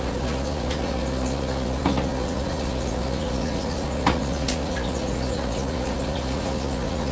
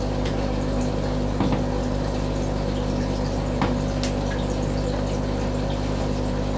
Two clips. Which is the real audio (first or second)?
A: second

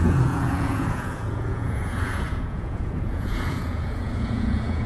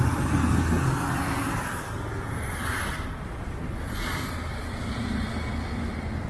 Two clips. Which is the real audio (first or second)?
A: second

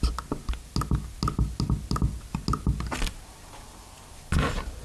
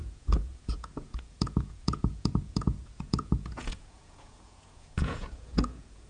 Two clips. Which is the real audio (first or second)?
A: first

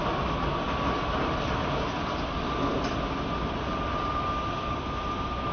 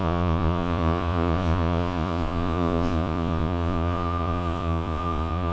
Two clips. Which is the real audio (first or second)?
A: first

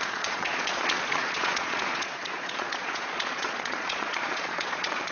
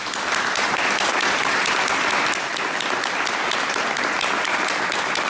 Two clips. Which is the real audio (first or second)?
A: second